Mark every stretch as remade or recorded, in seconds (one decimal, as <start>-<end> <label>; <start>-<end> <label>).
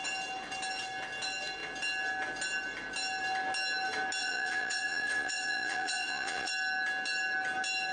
0.0-4.2 recorded; 4.2-6.5 remade; 6.5-7.9 recorded